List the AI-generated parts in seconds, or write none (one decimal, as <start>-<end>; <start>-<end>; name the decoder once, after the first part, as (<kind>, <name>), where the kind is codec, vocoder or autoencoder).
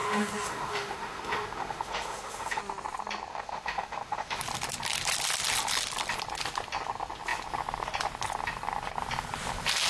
0.0-2.6 (autoencoder, DAC-VAE); 3.3-4.4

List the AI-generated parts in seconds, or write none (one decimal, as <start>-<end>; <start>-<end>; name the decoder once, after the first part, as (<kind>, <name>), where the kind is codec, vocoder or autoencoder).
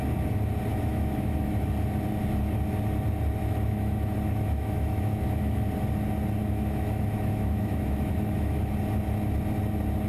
0.7-1.7 (autoencoder, DAC-VAE); 3.4-5.6; 6.4-8.7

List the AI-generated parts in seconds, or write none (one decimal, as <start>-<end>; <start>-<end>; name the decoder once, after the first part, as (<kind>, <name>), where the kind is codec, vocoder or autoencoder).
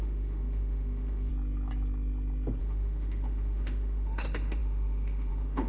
0.0-1.3 (autoencoder, DAC-VAE); 2.6-5.7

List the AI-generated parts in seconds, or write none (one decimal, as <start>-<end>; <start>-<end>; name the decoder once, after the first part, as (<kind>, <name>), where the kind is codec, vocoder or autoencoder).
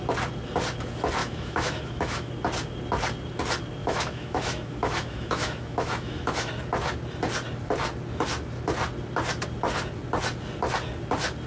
1.2-2.3 (autoencoder, DAC-VAE); 3.8-6.5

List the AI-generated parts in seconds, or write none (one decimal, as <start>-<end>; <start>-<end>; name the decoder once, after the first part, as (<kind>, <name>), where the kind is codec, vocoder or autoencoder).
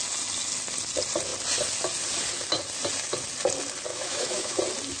3.9-4.6 (autoencoder, DAC-VAE)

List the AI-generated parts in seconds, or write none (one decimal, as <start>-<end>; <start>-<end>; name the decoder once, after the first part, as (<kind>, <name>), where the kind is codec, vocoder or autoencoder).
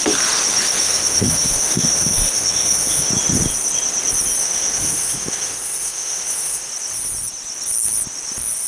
0.8-3.1 (autoencoder, DAC-VAE); 4.4-6.7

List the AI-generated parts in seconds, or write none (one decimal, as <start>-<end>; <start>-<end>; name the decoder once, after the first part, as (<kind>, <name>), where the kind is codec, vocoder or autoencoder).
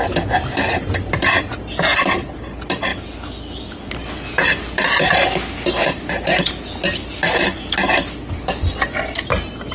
2.9-3.9 (autoencoder, DAC-VAE)